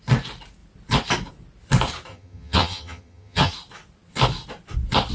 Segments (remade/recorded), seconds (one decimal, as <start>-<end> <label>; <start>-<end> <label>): 0.0-2.1 recorded; 2.1-3.5 remade; 3.5-5.1 recorded